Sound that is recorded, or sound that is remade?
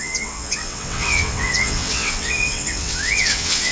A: remade